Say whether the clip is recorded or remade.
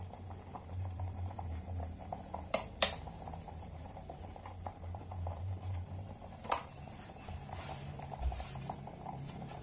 remade